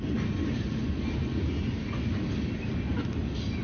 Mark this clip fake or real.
real